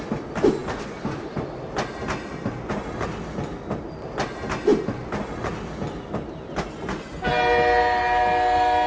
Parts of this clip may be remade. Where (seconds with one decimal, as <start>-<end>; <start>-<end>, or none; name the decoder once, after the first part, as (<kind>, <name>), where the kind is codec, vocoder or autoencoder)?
none